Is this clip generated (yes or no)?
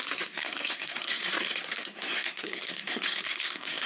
yes